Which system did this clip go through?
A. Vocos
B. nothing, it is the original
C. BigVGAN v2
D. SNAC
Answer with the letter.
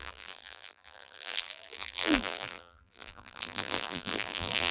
C